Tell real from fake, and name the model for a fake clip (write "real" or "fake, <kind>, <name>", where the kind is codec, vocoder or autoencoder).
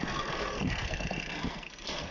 fake, codec, SNAC